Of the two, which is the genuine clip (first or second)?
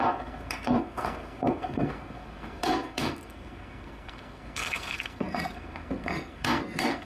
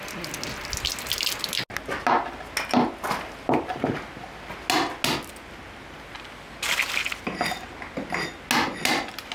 second